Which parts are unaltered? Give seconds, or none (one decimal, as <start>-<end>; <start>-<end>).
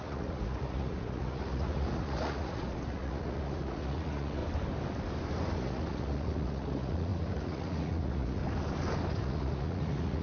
4.4-5.5; 8.4-9.1